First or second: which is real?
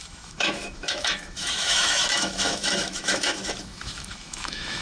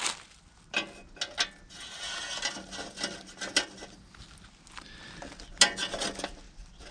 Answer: second